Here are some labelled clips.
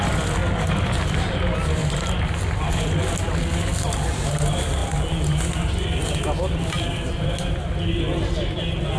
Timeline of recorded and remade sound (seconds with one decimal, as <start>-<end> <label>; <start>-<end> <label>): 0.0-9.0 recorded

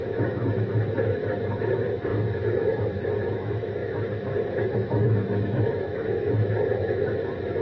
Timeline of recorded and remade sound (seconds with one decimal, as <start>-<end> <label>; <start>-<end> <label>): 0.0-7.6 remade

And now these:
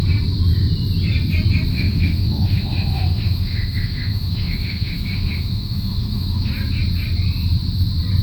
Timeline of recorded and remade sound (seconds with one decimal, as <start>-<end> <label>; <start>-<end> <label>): 0.0-1.7 recorded; 1.7-6.5 remade; 6.5-8.2 recorded

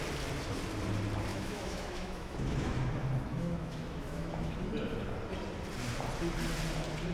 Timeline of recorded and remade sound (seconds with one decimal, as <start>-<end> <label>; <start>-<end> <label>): 0.0-1.3 recorded; 1.3-2.9 remade; 2.9-3.3 recorded; 3.3-4.7 remade; 4.7-7.1 recorded